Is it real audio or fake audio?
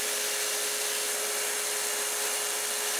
real